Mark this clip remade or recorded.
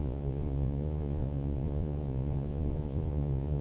remade